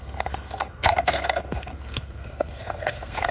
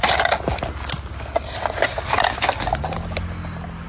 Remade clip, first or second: first